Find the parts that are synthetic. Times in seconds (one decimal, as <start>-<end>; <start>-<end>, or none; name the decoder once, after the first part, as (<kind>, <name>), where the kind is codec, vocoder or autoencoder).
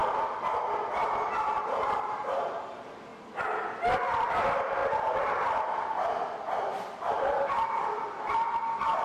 2.7-3.1 (vocoder, BigVGAN v2); 4.0-4.8; 7.1-9.0